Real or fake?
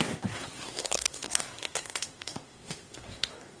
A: fake